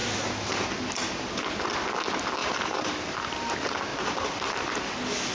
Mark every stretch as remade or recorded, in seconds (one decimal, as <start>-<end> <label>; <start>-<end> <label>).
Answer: 0.0-0.6 remade; 0.6-2.4 recorded; 2.4-3.5 remade; 3.5-3.9 recorded; 3.9-4.7 remade; 4.7-5.3 recorded